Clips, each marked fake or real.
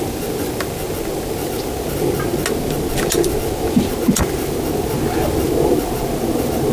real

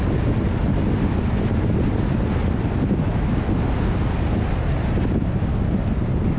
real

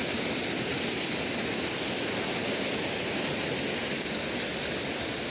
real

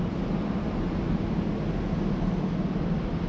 real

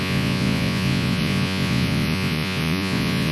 fake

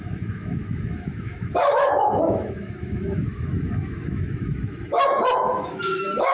fake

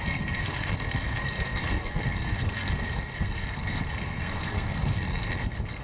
fake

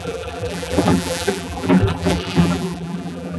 fake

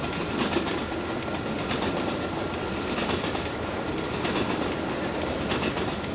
real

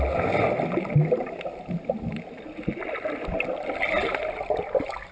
real